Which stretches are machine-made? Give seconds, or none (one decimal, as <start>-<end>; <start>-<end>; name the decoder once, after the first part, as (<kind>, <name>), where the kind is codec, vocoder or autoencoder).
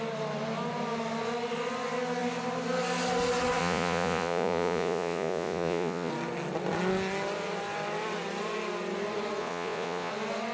3.6-6.1 (vocoder, Vocos); 9.4-10.1